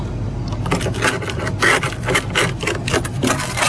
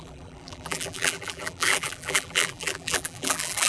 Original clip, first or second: first